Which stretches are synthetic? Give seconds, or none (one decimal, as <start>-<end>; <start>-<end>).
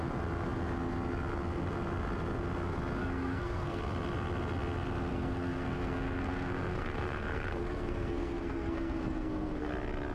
3.0-3.8; 5.1-9.7